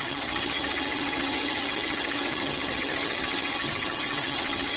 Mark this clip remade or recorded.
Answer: remade